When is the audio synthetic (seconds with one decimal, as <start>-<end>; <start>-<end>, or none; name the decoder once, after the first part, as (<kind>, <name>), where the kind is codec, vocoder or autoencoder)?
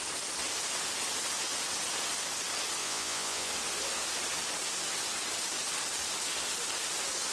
2.8-3.5 (vocoder, Vocos)